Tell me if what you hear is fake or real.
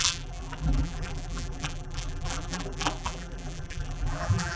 fake